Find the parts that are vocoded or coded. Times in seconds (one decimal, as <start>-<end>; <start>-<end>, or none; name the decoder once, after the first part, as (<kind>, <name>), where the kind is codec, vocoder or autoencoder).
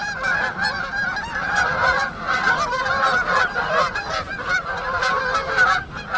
0.0-6.2 (vocoder, BigVGAN v2)